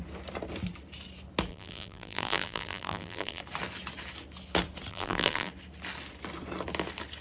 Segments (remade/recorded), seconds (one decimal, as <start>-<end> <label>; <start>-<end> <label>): 0.0-1.5 recorded; 1.5-3.4 remade; 3.4-4.9 recorded; 4.9-5.5 remade; 5.5-7.2 recorded